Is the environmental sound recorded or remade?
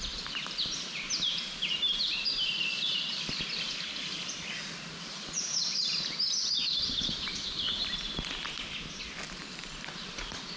remade